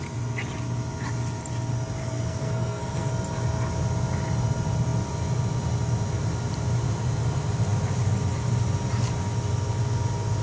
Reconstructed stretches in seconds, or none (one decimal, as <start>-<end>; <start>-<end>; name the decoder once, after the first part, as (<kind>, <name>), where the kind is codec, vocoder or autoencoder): 2.0-3.1 (codec, SNAC)